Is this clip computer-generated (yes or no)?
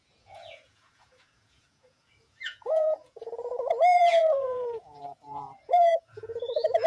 yes